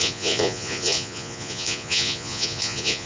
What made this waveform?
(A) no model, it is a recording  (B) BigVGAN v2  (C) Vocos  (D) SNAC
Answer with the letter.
C